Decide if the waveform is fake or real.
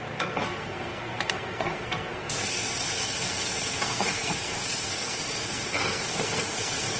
fake